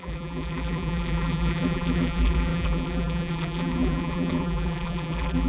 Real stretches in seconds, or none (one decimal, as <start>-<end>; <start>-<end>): none